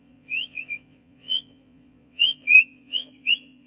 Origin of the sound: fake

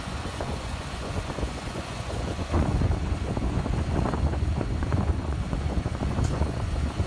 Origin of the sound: fake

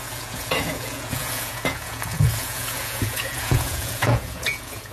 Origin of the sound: fake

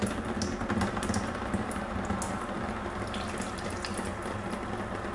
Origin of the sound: real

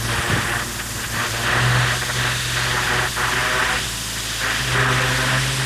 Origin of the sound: real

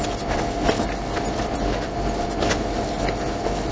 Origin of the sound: real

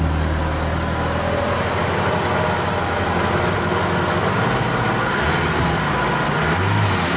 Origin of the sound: real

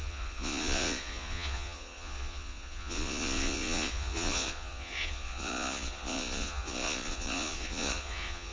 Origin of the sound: fake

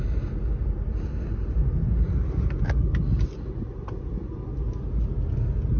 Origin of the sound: real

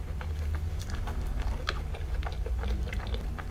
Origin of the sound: real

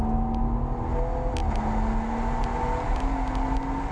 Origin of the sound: real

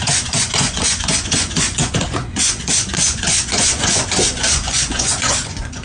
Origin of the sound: fake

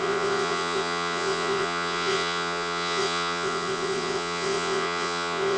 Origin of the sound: fake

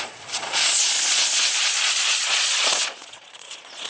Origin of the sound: fake